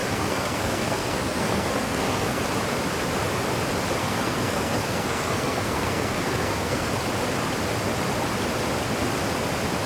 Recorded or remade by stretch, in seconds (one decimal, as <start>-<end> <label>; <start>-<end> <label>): 0.0-2.4 remade; 2.4-4.0 recorded; 4.0-6.9 remade; 6.9-9.9 recorded